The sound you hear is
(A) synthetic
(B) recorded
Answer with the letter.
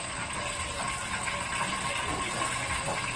B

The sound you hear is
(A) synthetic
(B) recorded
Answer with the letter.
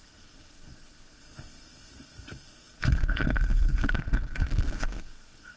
A